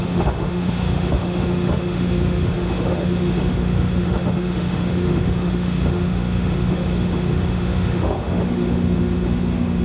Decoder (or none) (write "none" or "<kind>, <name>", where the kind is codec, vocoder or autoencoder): autoencoder, DAC-VAE